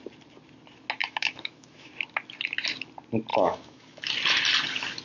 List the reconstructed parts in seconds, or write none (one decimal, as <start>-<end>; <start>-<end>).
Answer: 1.0-1.9; 3.3-4.1